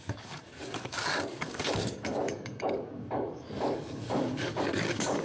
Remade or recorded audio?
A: remade